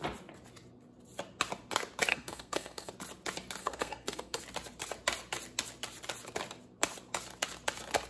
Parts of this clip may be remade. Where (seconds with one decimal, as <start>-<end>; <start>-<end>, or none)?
2.1-2.9; 3.6-4.4